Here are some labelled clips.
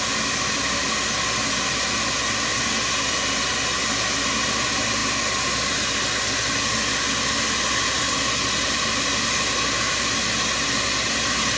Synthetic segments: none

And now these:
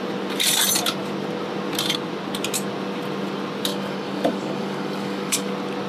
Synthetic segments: 3.7-5.5 (codec, DAC)

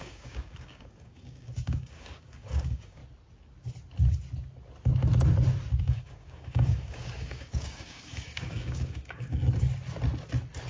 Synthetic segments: 0.0-3.0 (codec, DAC); 5.8-9.4

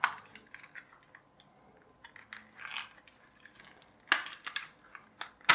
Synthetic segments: none

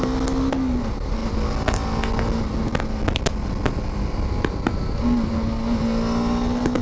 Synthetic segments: none